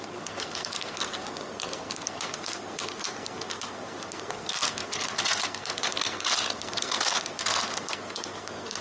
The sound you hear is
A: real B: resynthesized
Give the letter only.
B